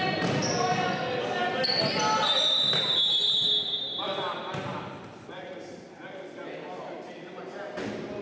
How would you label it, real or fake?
real